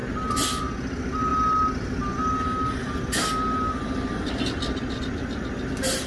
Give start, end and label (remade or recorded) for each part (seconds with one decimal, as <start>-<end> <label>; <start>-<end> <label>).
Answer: 0.0-6.1 recorded